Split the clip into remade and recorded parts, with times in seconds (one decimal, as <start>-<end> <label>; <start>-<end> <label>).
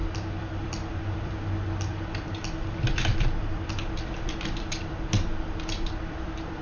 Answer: 0.0-6.6 remade